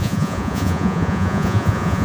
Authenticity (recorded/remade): remade